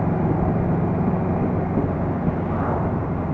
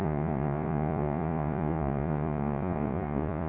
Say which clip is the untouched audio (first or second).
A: first